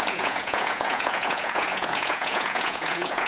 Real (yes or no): no